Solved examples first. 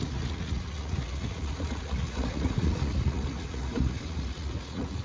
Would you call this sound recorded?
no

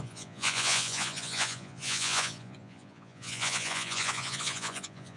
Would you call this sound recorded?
no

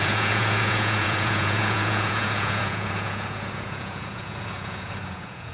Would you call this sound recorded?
no